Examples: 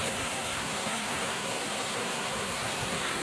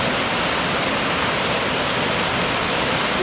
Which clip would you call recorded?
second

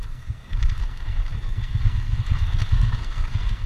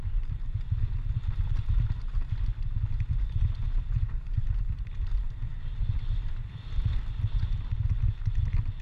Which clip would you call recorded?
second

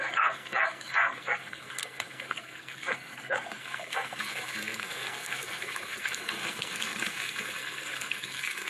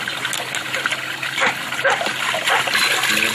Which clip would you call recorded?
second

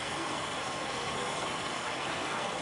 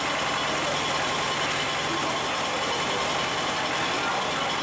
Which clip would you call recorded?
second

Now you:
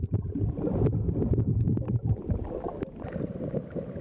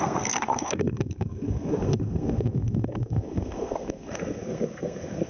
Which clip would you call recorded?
first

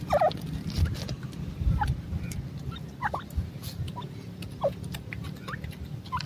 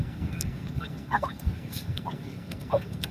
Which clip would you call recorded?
first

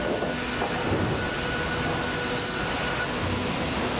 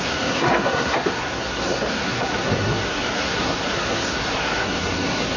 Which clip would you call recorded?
first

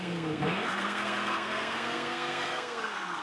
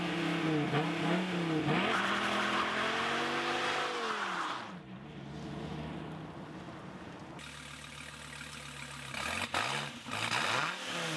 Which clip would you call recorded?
second